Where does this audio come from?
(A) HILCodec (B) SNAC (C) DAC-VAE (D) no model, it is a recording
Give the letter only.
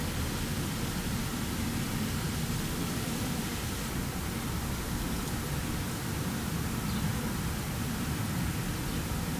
D